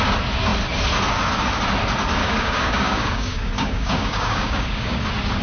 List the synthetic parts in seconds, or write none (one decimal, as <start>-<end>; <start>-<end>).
2.2-5.0